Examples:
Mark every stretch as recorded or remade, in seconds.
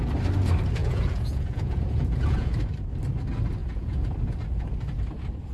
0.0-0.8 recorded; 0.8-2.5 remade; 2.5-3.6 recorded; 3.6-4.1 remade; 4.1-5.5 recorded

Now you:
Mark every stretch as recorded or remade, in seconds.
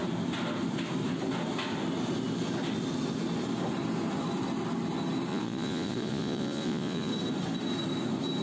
0.0-5.3 recorded; 5.3-7.1 remade; 7.1-8.4 recorded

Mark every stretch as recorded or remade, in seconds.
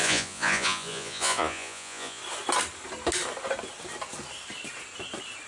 0.0-2.2 remade; 2.2-5.5 recorded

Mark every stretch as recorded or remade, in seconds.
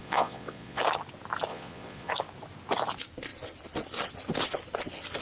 0.0-0.8 remade; 0.8-1.5 recorded; 1.5-2.1 remade; 2.1-5.2 recorded